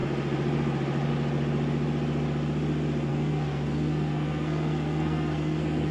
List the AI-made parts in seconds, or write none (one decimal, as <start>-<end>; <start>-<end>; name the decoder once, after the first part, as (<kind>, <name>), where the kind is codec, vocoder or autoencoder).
3.1-5.9 (codec, SNAC)